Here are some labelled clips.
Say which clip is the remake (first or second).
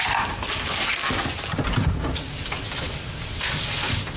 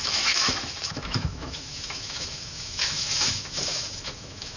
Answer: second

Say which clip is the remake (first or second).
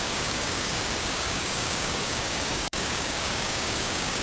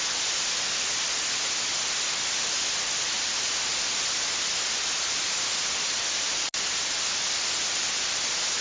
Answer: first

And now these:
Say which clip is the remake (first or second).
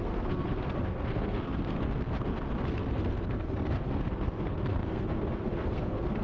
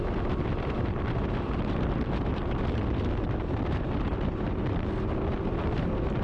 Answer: first